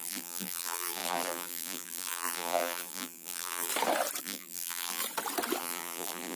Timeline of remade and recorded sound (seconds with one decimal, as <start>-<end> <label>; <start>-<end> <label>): 0.0-3.7 remade; 3.7-4.2 recorded; 4.2-5.0 remade; 5.0-5.6 recorded; 5.6-6.4 remade